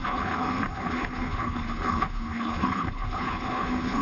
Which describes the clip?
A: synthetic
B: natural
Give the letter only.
A